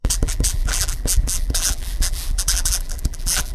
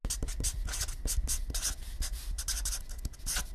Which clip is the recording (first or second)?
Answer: second